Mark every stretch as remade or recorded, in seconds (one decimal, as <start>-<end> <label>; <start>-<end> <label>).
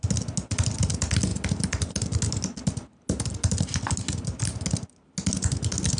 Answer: 0.0-6.0 recorded